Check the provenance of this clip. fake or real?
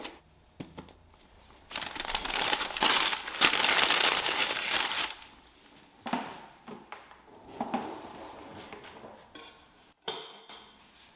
real